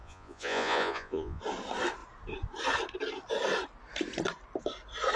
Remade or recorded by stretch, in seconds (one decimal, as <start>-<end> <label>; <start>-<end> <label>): 0.0-1.4 remade; 1.4-5.2 recorded